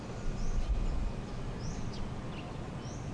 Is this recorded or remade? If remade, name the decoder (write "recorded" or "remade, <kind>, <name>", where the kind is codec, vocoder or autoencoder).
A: recorded